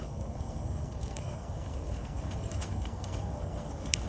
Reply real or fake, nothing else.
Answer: fake